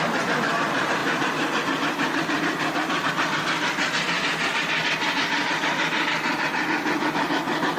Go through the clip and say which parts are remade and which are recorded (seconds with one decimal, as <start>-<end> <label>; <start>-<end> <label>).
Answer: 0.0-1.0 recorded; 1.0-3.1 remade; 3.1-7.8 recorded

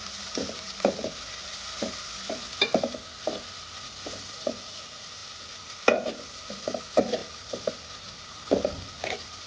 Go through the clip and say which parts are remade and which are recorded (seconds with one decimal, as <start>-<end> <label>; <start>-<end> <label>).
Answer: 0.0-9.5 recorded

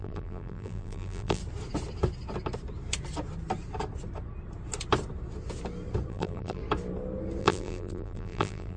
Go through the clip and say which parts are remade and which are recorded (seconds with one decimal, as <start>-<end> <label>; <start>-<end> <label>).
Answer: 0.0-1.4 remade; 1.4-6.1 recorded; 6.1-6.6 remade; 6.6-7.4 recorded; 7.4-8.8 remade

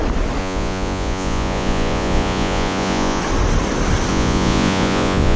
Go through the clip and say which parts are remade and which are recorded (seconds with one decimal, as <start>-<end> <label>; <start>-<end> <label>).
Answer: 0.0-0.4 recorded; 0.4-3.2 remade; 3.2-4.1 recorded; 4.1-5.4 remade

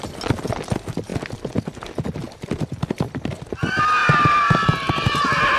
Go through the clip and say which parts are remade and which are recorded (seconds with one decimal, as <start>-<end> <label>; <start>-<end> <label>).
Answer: 0.0-5.6 recorded